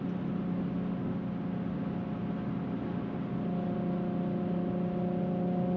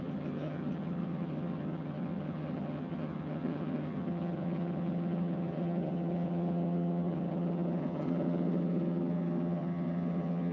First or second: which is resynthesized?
second